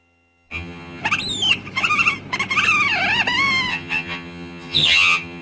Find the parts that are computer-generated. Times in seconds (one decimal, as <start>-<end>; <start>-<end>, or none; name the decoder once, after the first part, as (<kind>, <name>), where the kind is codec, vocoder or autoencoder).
0.0-1.0 (vocoder, HiFi-GAN); 3.7-5.4